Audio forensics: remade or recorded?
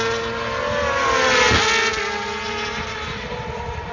recorded